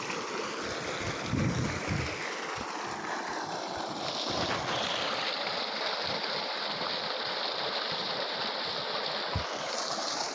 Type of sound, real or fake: real